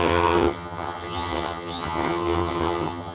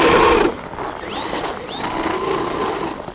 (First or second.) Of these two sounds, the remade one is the first